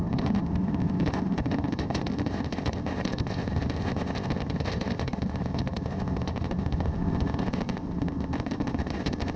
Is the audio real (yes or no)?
no